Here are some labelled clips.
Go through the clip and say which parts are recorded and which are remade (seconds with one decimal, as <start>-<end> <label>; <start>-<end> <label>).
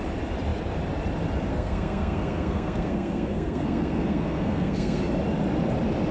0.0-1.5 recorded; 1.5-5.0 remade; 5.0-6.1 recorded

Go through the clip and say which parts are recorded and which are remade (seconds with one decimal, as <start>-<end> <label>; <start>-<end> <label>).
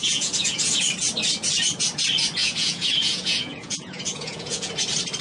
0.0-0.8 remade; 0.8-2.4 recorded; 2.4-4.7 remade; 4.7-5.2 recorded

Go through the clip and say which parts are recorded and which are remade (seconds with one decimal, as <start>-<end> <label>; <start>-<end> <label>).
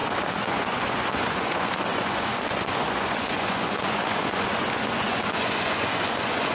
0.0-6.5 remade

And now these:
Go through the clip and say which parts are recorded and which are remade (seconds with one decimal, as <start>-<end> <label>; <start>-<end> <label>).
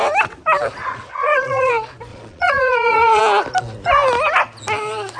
0.0-0.8 recorded; 0.8-1.7 remade; 1.7-2.1 recorded; 2.1-3.2 remade; 3.2-5.2 recorded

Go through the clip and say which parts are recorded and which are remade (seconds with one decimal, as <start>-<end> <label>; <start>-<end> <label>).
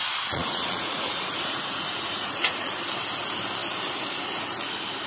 0.0-2.8 remade; 2.8-5.1 recorded